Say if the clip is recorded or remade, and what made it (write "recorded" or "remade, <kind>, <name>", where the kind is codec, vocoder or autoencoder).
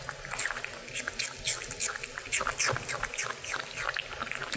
recorded